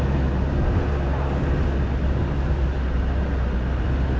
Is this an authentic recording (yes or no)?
yes